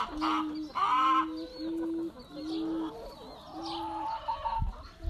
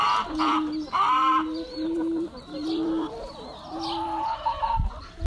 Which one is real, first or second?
first